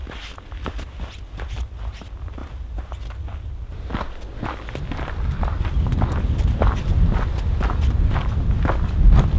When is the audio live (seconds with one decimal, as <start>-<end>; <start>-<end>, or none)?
0.0-9.4